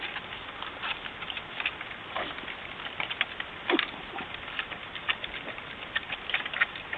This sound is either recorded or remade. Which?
recorded